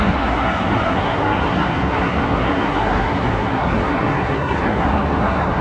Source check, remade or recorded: remade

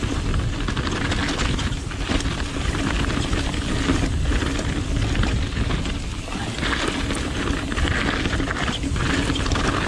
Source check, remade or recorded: recorded